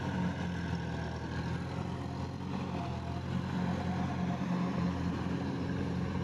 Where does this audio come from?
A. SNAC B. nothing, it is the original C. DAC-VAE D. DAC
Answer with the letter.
B